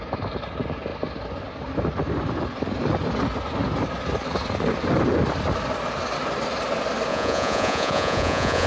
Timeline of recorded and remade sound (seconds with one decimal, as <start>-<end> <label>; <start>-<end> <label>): 0.0-7.1 recorded; 7.1-8.7 remade